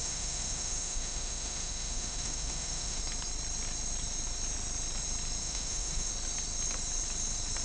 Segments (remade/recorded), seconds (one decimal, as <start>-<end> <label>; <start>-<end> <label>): 0.0-3.0 remade; 3.0-5.4 recorded; 5.4-6.1 remade; 6.1-7.6 recorded